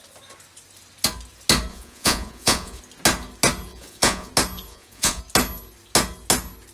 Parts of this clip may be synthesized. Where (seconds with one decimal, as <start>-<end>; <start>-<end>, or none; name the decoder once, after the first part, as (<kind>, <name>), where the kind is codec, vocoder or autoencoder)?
1.7-2.8 (vocoder, Vocos); 3.7-4.3; 4.7-5.2